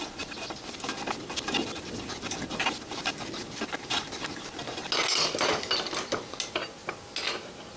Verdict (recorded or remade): recorded